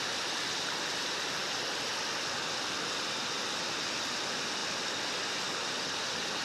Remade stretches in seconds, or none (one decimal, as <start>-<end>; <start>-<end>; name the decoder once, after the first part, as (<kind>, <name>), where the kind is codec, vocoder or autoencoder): none